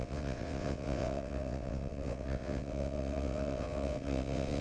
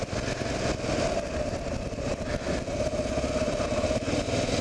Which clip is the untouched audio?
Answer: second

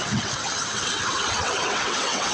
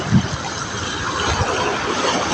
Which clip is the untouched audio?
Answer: second